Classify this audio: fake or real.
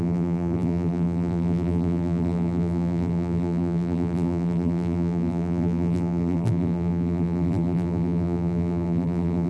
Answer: fake